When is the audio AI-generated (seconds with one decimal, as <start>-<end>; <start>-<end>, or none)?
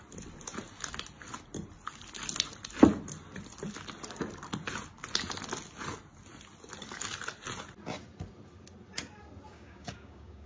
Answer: 9.5-10.5